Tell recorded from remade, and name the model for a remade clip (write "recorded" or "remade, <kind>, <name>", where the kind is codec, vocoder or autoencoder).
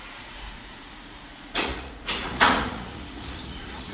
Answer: remade, vocoder, Vocos